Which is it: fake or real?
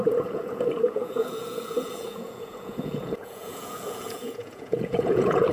fake